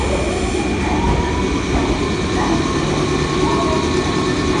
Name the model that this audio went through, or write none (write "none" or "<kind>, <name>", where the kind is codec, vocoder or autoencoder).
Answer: none